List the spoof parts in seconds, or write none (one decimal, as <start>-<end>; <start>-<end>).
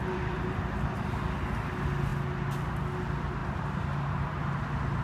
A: 3.4-4.5